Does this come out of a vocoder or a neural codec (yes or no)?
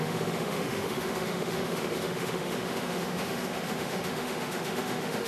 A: yes